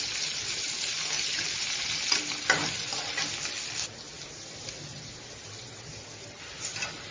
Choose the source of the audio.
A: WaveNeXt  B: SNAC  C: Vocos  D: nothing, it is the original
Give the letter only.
D